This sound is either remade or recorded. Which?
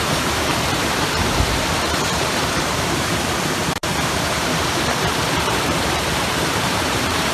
remade